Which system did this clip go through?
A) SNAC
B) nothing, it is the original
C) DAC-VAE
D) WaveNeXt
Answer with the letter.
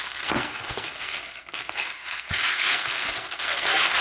A